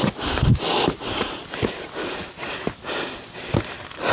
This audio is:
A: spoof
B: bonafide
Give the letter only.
B